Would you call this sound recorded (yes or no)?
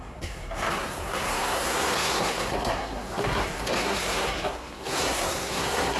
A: no